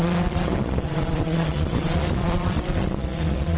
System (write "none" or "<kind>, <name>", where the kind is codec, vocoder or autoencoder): vocoder, Vocos